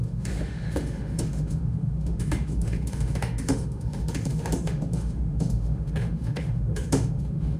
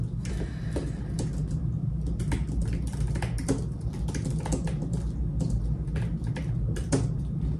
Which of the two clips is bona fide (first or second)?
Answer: second